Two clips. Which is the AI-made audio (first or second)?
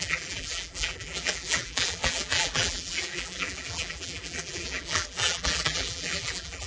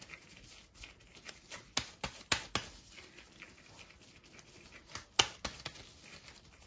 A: first